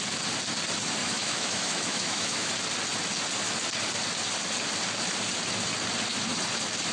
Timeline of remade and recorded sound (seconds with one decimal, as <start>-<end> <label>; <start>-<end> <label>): 0.0-1.0 recorded; 1.0-2.5 remade; 2.5-6.9 recorded